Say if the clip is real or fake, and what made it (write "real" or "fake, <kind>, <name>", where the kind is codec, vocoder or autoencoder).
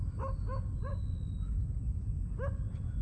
real